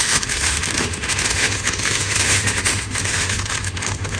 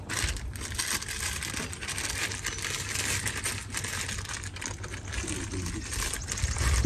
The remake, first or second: first